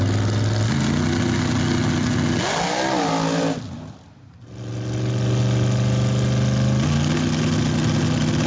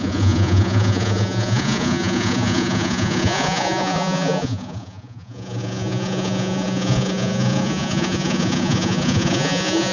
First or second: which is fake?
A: second